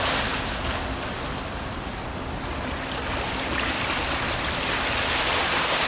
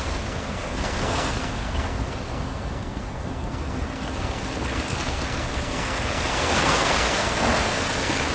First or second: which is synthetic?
second